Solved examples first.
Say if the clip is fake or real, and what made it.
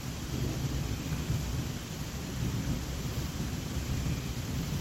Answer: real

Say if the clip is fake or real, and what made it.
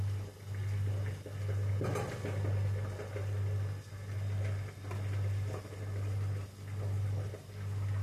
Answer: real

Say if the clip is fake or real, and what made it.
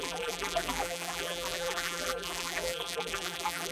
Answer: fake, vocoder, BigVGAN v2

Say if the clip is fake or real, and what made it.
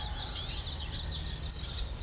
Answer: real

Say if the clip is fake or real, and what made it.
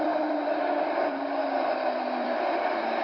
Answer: fake, vocoder, BigVGAN v2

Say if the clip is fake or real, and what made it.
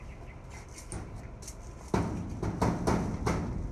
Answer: real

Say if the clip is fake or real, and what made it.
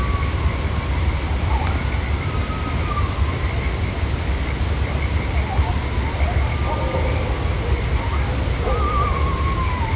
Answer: real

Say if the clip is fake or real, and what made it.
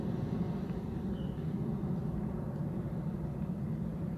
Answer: fake, vocoder, BigVGAN v2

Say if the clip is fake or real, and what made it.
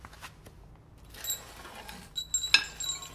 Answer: real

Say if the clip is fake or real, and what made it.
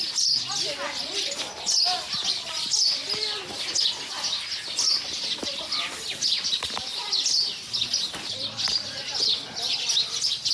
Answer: real